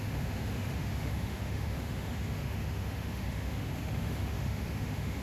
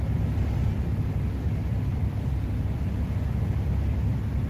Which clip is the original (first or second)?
second